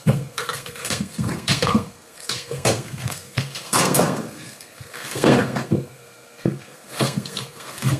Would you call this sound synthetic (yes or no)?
yes